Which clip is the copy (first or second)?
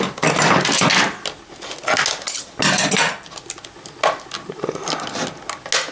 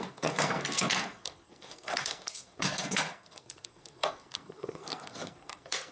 second